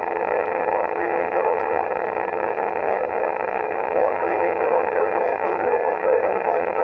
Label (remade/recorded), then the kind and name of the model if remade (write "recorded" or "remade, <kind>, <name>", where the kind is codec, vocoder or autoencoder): remade, vocoder, HiFi-GAN